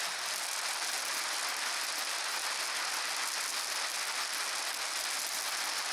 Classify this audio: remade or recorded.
recorded